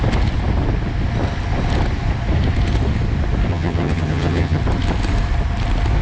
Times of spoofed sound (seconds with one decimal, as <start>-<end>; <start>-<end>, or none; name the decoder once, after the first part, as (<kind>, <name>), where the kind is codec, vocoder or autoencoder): 3.5-4.6 (vocoder, HiFi-GAN)